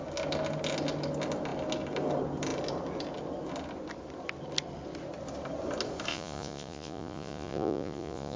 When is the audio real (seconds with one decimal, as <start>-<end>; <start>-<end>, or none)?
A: 0.0-6.1

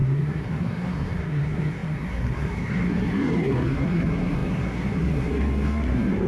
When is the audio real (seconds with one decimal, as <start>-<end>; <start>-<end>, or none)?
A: none

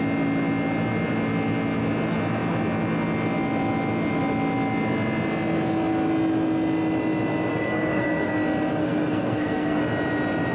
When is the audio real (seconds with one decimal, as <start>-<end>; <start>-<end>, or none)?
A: 0.0-7.5; 8.3-8.8; 9.8-10.5

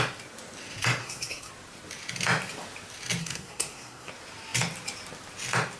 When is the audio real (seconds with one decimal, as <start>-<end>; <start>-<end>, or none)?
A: 0.0-1.0; 1.5-3.2; 4.1-5.8

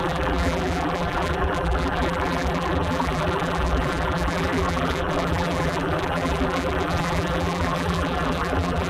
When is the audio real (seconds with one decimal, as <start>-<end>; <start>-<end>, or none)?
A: none

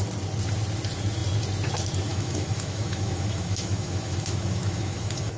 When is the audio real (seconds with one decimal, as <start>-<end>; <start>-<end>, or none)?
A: 0.0-2.1